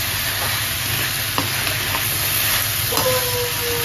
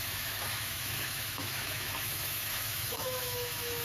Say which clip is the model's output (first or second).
second